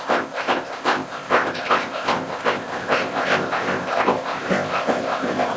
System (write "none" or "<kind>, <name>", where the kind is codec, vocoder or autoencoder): codec, ZipCodec